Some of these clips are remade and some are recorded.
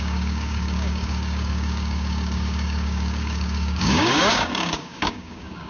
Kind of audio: remade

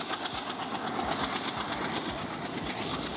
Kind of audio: recorded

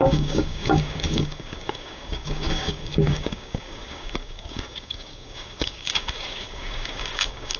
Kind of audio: remade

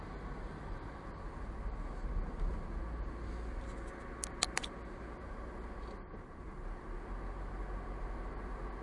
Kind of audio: recorded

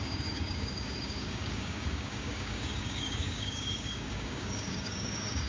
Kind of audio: remade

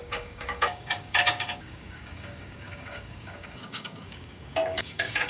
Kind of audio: remade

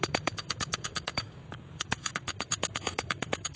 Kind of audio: remade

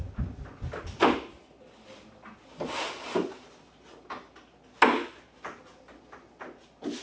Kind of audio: recorded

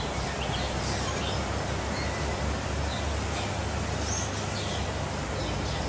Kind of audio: recorded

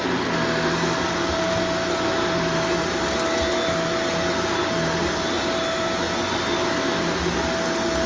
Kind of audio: recorded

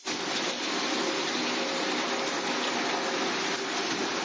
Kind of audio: recorded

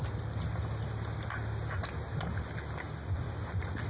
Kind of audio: recorded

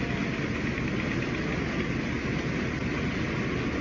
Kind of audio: recorded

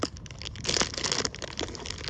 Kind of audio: recorded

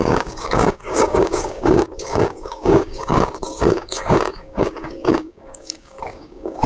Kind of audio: remade